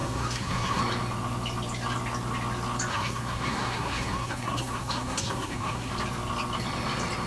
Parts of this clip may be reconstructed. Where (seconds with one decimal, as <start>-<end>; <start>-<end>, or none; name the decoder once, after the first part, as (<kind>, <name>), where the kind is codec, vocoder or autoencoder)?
0.0-0.8 (codec, SNAC); 2.9-5.9